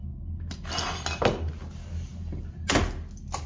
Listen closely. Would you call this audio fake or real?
real